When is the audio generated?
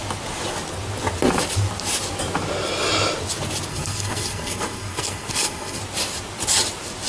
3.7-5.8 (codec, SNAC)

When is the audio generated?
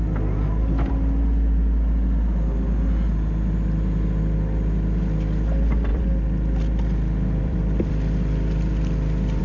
5.9-9.4 (vocoder, BigVGAN v2)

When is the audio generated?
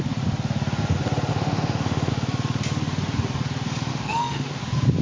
1.3-2.1 (autoencoder, DAC-VAE); 3.9-4.6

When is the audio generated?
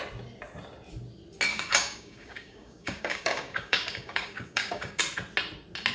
1.5-5.0 (codec, DAC)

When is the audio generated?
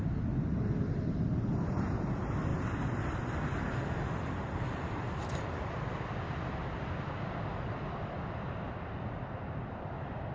none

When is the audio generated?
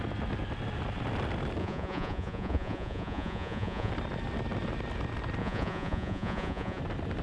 1.6-3.9 (vocoder, Vocos); 5.4-6.8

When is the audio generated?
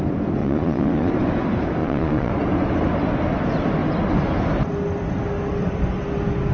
0.4-1.1 (vocoder, Vocos); 1.8-2.3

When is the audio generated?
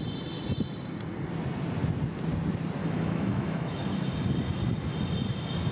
2.8-4.1 (autoencoder, DAC-VAE)